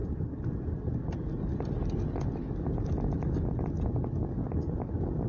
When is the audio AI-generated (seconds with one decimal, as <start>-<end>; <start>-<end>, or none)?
none